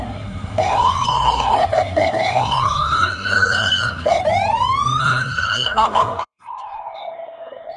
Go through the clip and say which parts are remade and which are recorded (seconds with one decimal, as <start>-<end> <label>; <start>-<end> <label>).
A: 0.0-4.2 remade; 4.2-5.0 recorded; 5.0-7.8 remade